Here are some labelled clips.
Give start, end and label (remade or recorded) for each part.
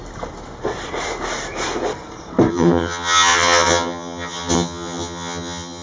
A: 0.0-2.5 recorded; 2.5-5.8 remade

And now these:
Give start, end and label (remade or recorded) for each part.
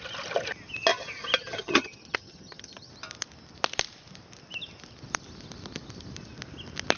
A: 0.0-1.4 recorded; 1.4-2.9 remade; 2.9-7.0 recorded